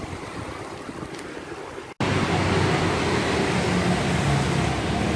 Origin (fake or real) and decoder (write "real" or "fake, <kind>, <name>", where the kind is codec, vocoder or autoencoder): real